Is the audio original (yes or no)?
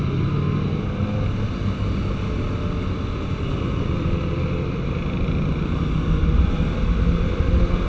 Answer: yes